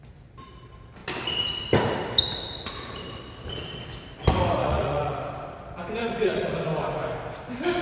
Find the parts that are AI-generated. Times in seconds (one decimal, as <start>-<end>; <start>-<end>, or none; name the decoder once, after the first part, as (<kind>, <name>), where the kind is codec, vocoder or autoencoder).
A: 4.6-5.2 (vocoder, Vocos); 6.0-6.5